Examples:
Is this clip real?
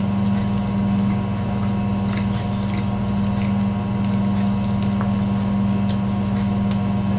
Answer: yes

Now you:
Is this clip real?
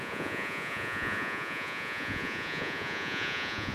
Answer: no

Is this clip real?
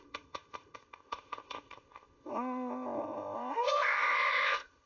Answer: no